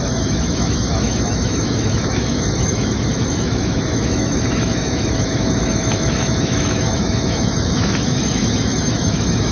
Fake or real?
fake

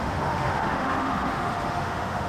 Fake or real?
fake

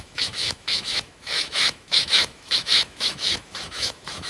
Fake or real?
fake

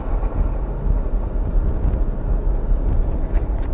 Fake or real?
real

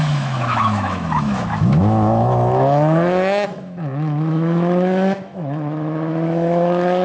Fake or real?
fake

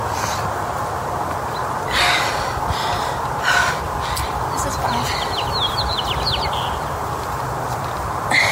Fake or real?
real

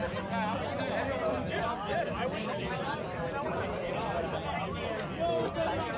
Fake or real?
real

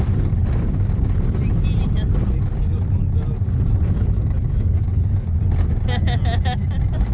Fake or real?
real